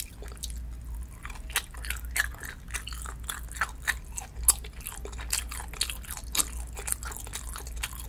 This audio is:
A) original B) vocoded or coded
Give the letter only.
A